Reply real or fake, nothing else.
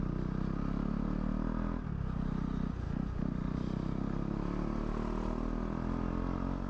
real